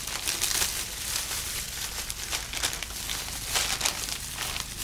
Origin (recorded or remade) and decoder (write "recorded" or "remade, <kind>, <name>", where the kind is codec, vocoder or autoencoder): recorded